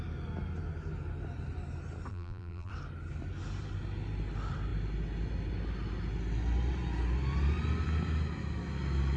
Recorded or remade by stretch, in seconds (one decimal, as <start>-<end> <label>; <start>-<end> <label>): 0.0-2.1 recorded; 2.1-2.7 remade; 2.7-9.2 recorded